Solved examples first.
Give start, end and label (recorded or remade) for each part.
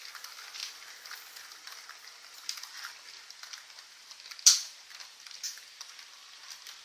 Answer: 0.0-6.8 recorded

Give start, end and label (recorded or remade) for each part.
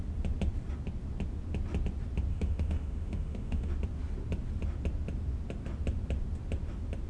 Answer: 0.0-2.3 recorded; 2.3-3.7 remade; 3.7-7.1 recorded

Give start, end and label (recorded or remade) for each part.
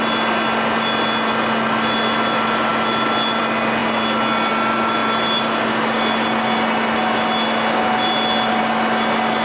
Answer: 0.0-9.4 recorded